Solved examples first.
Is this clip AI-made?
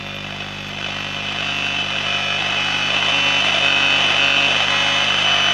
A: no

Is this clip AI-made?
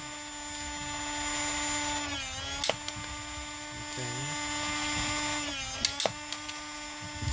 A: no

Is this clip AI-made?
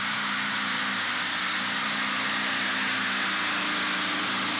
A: no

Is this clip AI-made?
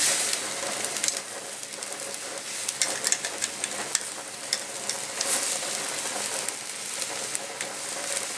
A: no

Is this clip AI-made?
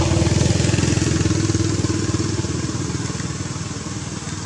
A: no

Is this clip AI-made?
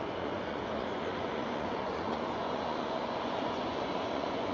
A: yes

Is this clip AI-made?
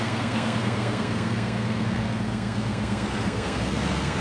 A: yes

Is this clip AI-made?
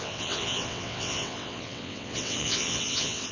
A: yes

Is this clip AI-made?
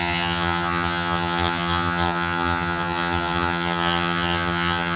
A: yes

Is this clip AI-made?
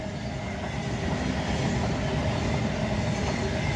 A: no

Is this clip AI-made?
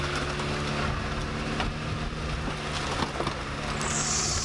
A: no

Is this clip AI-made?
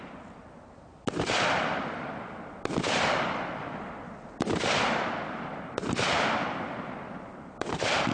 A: no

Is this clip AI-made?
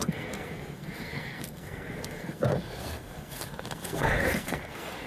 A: yes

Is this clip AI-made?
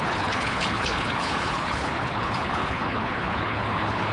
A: yes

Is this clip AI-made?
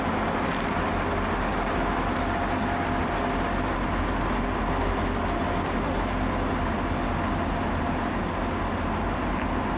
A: no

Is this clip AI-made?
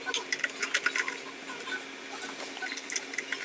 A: no